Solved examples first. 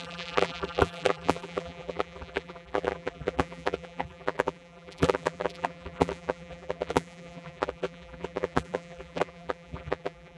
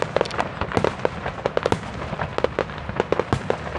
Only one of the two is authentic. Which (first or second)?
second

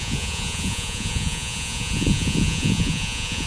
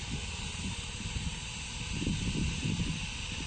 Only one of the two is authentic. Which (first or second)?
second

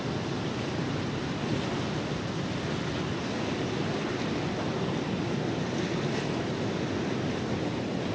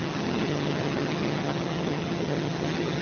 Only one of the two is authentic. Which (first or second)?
first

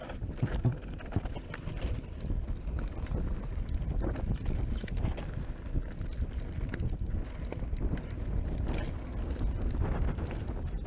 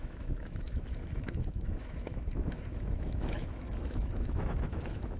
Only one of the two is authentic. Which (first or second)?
first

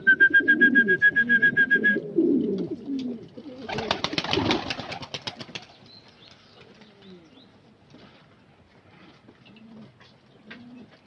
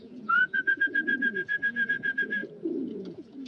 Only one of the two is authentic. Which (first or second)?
first